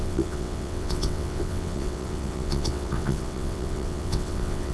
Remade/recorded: remade